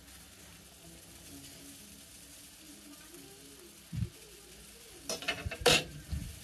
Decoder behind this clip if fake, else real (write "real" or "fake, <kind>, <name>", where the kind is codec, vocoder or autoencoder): real